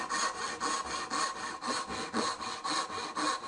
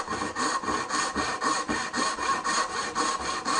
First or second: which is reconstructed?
second